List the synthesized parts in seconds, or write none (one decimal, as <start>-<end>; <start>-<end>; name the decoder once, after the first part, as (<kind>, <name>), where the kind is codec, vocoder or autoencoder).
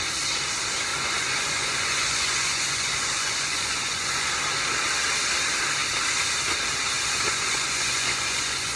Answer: 0.9-4.3 (vocoder, Vocos); 7.3-8.8